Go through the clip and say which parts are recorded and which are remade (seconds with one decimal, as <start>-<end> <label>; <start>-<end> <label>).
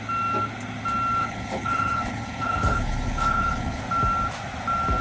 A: 0.0-1.2 recorded; 1.2-3.8 remade; 3.8-5.0 recorded